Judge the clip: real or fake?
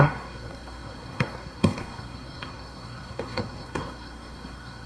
fake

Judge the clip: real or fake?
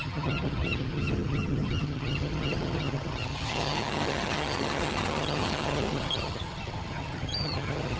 fake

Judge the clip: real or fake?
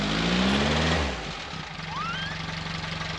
real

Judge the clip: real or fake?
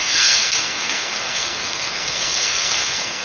fake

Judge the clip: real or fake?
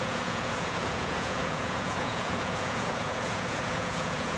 fake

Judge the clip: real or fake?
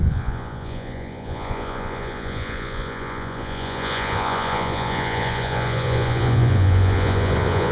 fake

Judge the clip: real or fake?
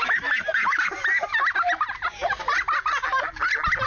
real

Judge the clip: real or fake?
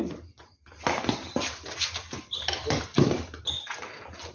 real